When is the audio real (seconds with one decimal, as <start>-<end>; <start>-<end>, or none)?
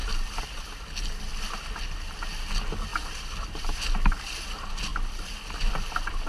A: 0.0-2.9; 3.8-6.3